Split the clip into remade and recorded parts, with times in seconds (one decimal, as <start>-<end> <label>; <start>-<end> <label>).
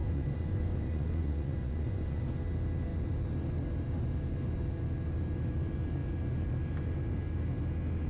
0.0-2.2 remade; 2.2-8.1 recorded